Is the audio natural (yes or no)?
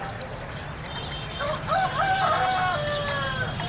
yes